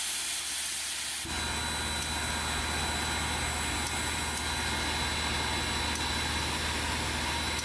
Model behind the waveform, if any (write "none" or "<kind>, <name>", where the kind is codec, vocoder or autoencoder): none